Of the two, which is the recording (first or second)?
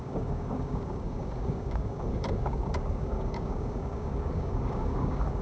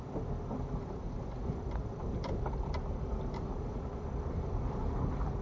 second